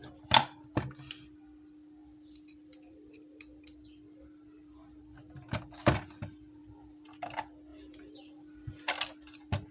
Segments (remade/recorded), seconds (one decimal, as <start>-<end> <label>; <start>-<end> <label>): 0.0-2.0 recorded; 2.0-5.6 remade; 5.6-6.6 recorded; 6.6-7.1 remade; 7.1-9.7 recorded